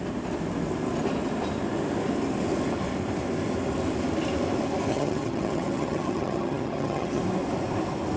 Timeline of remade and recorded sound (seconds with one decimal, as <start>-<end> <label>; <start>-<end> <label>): 0.0-4.9 recorded; 4.9-7.2 remade; 7.2-8.2 recorded